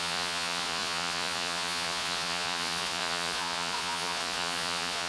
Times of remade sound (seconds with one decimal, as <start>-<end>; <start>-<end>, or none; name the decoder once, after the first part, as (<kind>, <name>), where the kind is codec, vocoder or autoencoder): 0.0-5.1 (vocoder, Vocos)